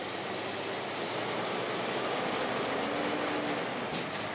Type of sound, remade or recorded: recorded